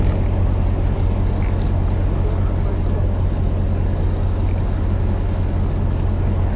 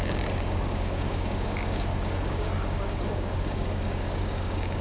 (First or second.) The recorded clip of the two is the first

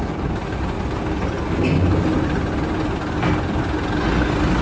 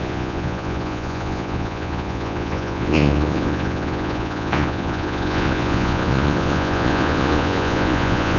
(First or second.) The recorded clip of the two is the first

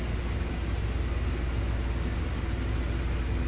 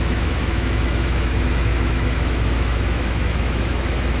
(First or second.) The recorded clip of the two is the first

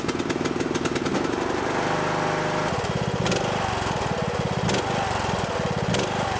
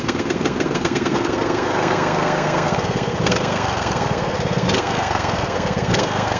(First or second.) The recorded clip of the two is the first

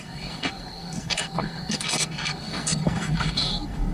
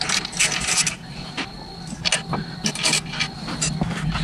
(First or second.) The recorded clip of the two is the second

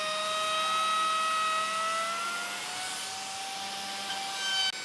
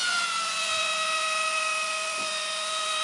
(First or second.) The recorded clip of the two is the first